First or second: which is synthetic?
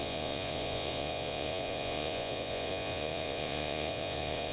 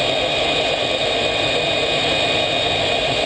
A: first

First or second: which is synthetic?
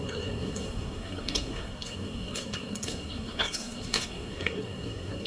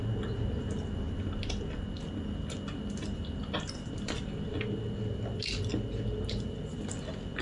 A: first